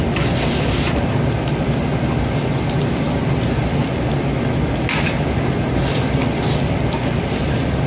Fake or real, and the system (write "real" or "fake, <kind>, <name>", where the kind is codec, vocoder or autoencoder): real